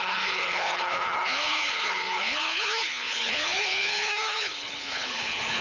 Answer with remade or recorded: remade